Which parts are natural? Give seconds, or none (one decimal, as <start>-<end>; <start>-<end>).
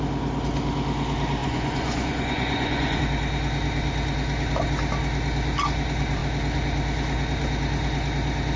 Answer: 0.0-1.4; 3.0-8.6